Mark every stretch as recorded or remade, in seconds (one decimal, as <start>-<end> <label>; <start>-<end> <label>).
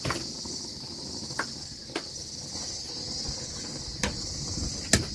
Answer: 0.0-5.1 recorded